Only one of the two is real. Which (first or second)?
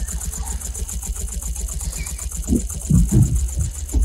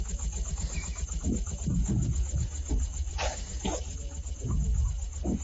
first